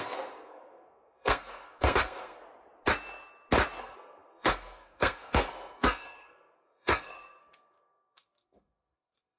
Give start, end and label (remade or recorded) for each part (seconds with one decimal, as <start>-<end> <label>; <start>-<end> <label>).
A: 0.0-2.4 remade; 2.4-3.8 recorded; 3.8-9.4 remade